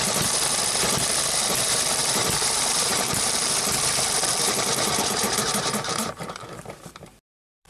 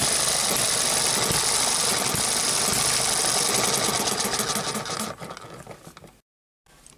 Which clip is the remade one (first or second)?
first